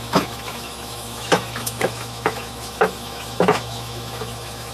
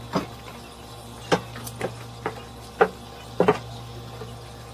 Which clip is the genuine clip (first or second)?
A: second